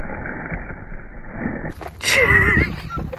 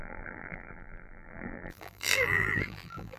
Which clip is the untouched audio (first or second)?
first